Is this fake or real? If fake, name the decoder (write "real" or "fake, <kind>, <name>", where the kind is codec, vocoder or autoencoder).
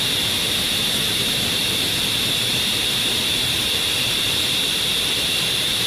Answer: fake, vocoder, BigVGAN v2